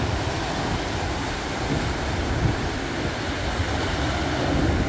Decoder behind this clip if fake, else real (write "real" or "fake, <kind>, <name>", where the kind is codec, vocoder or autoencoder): real